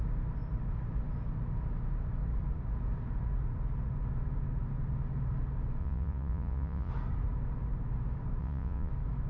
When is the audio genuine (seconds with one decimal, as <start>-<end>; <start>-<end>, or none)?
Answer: 0.0-5.8; 6.9-8.4; 8.9-9.3